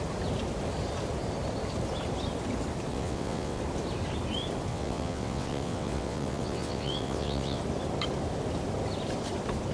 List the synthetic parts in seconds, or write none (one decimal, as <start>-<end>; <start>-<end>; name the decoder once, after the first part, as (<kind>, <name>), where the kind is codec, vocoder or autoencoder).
2.9-3.6 (vocoder, WaveNeXt); 4.7-7.6